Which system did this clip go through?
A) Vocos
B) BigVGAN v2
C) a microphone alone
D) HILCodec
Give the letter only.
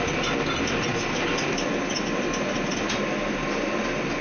C